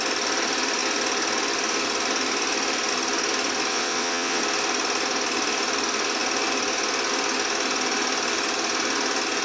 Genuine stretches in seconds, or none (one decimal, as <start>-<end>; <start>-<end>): 0.0-3.7; 4.4-9.4